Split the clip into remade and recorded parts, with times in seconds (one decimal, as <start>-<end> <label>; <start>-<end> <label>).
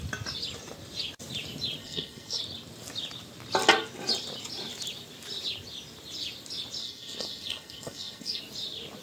0.0-1.8 recorded; 1.8-2.4 remade; 2.4-6.8 recorded; 6.8-8.4 remade; 8.4-9.0 recorded